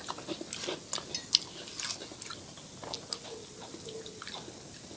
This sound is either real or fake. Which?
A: real